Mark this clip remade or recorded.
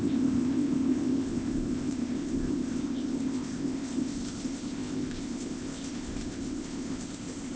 remade